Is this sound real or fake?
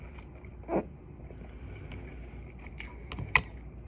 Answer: real